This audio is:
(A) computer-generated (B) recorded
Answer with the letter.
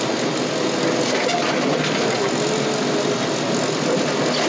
B